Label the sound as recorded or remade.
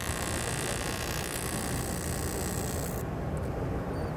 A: recorded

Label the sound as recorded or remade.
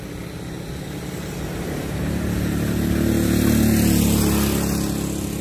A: recorded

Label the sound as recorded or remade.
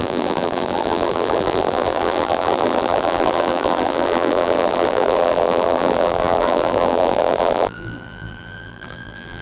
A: remade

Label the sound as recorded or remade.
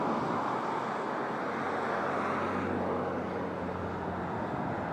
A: recorded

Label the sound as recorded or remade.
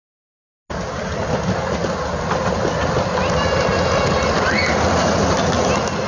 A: recorded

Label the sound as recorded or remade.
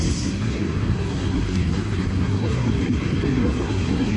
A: remade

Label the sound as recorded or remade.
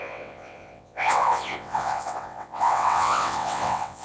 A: remade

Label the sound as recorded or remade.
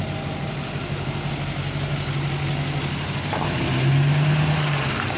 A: recorded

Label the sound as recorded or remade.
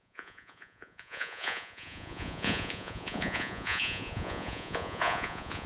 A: remade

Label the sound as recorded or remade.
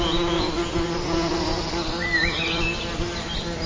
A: recorded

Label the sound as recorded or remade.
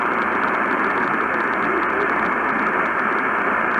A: recorded